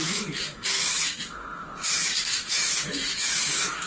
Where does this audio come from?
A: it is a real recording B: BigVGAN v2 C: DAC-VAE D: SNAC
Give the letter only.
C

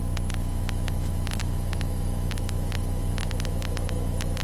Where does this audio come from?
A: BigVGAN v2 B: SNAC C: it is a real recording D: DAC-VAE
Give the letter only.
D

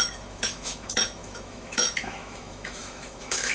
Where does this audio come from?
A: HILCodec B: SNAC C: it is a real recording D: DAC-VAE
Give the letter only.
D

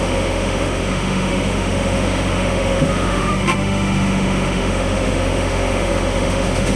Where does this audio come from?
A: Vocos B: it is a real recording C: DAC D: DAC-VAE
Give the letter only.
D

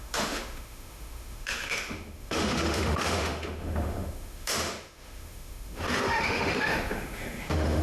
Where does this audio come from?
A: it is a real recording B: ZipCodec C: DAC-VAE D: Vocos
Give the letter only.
C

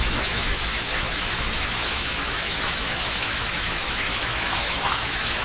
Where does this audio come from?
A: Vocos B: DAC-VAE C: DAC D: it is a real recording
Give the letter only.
B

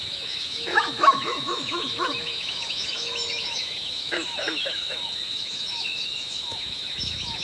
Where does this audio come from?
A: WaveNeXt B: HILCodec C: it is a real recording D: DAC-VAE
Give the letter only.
D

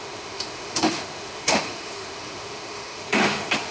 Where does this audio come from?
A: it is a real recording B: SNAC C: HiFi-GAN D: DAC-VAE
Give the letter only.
D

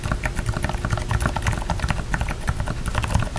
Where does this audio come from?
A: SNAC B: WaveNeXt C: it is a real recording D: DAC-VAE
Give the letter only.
C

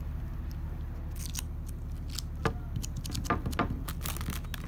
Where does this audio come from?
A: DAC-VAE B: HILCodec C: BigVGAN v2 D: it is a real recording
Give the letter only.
D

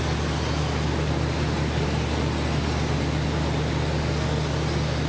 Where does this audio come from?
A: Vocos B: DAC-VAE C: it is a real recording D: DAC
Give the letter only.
C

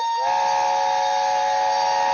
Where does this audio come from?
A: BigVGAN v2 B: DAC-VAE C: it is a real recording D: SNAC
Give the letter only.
C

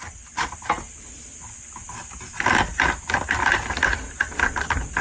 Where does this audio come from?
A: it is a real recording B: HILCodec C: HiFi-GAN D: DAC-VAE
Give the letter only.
A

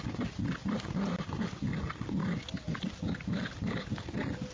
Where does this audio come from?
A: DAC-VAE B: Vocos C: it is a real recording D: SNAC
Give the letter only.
C